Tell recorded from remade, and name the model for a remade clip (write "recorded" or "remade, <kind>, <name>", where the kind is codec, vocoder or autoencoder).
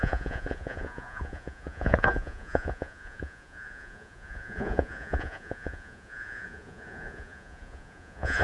remade, vocoder, Vocos